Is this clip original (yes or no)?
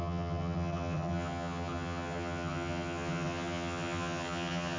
no